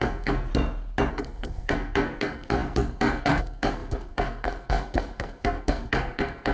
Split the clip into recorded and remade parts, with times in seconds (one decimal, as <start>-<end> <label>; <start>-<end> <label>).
0.0-0.5 remade; 0.5-1.1 recorded; 1.1-6.5 remade